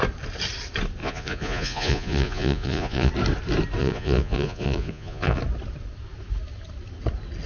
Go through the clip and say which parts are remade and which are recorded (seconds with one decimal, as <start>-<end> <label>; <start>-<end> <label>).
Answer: 0.0-1.0 recorded; 1.0-3.1 remade; 3.1-3.8 recorded; 3.8-5.4 remade; 5.4-7.5 recorded